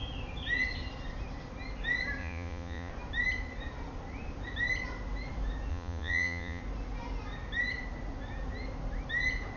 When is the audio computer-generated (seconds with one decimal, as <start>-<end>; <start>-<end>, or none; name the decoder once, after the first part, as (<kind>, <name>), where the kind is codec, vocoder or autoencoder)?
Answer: 2.2-2.9 (vocoder, Vocos); 5.7-6.6